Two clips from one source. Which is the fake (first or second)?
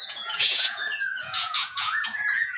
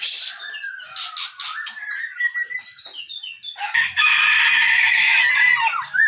first